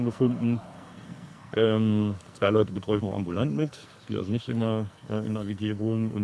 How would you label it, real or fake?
fake